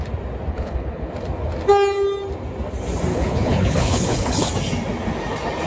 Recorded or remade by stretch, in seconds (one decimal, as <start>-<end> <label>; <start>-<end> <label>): 0.0-0.5 recorded; 0.5-1.1 remade; 1.1-3.1 recorded; 3.1-4.5 remade; 4.5-5.7 recorded